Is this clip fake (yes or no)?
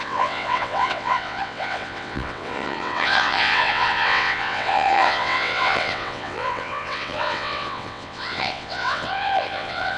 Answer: yes